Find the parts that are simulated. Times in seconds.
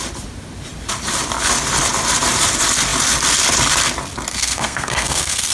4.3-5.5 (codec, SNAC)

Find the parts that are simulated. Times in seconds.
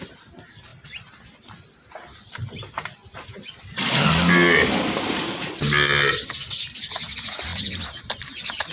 none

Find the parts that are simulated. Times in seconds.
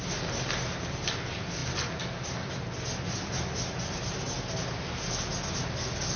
none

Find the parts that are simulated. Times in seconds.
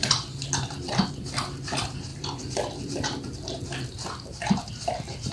0.0-1.1 (vocoder, BigVGAN v2); 2.1-4.7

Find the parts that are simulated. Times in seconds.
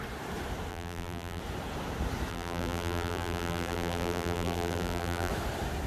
0.7-1.4 (vocoder, BigVGAN v2); 2.3-5.3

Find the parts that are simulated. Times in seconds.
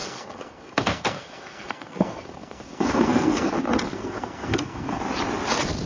0.0-3.5 (codec, SNAC); 3.9-5.0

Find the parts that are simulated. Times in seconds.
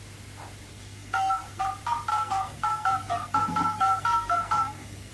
0.7-1.6 (codec, SNAC); 2.1-5.1